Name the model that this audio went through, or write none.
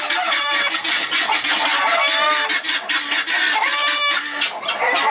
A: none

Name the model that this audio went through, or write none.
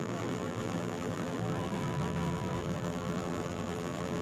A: vocoder, BigVGAN v2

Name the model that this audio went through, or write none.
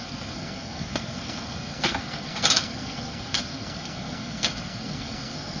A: codec, SNAC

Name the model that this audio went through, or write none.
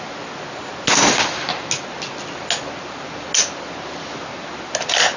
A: none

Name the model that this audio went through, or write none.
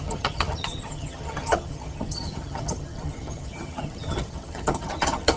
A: vocoder, HiFi-GAN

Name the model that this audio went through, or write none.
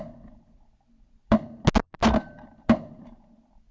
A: none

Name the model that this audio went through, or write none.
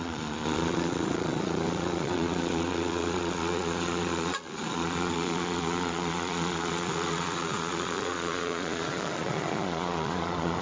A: vocoder, Vocos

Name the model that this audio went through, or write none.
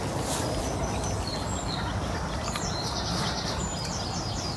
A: none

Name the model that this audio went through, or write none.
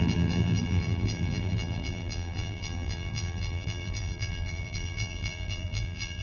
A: vocoder, BigVGAN v2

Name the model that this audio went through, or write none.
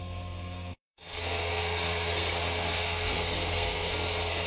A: codec, SNAC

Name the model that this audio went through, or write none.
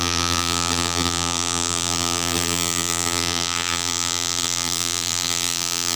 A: vocoder, BigVGAN v2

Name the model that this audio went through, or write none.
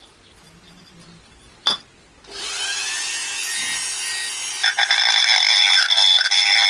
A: none